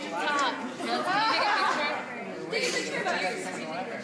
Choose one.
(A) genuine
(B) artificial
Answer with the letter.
A